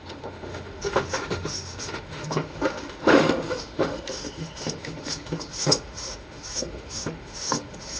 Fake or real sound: fake